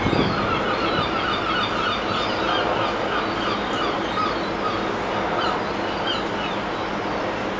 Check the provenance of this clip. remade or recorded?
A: recorded